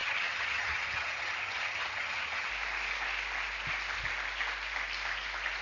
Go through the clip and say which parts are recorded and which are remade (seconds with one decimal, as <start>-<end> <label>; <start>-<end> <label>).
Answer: 0.0-2.5 remade; 2.5-5.6 recorded

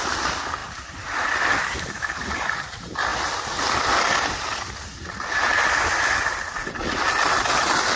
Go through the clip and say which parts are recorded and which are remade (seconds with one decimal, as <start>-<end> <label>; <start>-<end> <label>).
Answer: 0.0-8.0 recorded

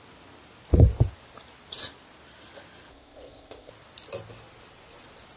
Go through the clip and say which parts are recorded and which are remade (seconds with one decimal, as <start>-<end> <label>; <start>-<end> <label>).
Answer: 0.0-2.9 recorded; 2.9-3.7 remade; 3.7-5.4 recorded

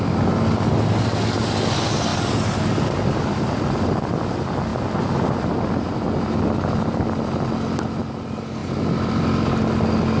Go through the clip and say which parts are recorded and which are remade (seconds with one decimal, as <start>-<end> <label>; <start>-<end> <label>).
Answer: 0.0-10.2 recorded